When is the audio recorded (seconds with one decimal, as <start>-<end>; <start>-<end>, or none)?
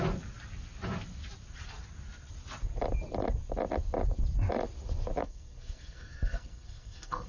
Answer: 0.0-5.2